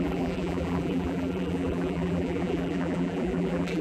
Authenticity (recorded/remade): remade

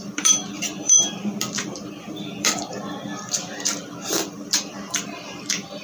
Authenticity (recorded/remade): remade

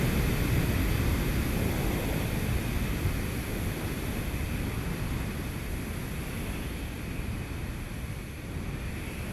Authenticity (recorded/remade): recorded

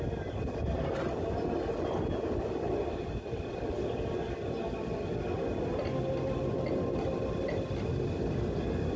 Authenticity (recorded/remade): recorded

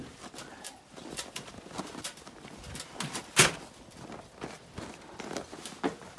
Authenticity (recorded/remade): recorded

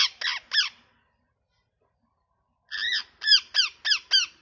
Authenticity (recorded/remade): recorded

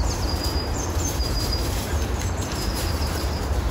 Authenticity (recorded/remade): remade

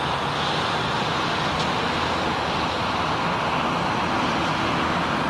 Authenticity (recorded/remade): recorded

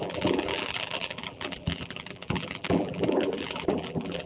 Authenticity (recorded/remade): remade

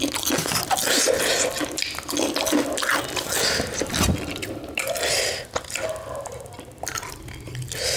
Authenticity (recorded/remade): recorded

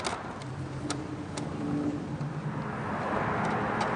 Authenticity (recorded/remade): recorded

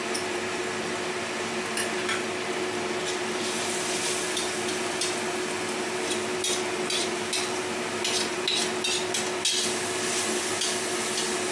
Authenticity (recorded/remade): recorded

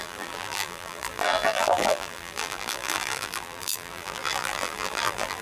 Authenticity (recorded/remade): remade